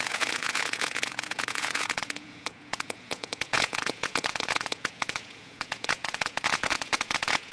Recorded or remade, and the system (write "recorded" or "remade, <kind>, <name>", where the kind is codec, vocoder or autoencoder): remade, vocoder, Vocos